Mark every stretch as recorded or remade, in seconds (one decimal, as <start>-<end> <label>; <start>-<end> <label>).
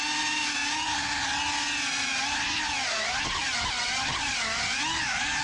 0.0-5.4 recorded